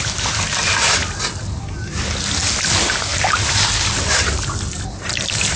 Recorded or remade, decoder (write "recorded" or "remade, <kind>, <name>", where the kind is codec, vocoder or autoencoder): recorded